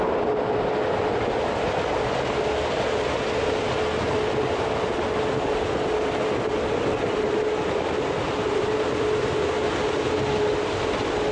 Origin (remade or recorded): recorded